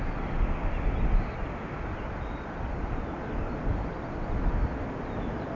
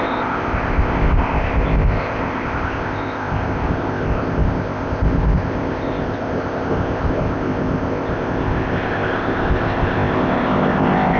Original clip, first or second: first